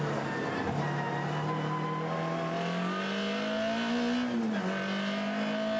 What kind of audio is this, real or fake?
real